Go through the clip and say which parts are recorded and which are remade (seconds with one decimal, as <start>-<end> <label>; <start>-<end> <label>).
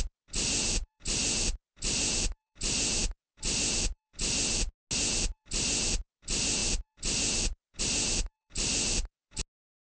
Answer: 0.0-9.8 recorded